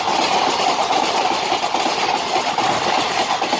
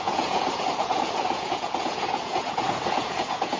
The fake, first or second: second